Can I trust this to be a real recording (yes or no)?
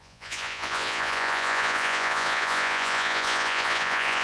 no